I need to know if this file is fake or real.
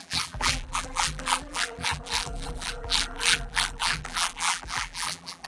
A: fake